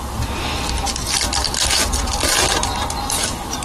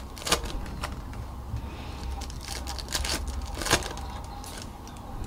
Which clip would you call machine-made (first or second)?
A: first